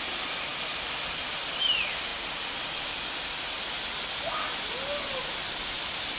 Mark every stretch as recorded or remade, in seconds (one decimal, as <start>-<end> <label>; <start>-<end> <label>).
0.0-6.2 recorded